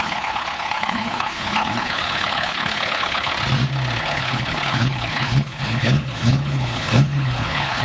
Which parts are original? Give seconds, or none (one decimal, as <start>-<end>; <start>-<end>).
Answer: 3.3-4.0